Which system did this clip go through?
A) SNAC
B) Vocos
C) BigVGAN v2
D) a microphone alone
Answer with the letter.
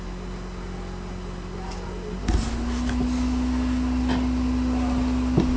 D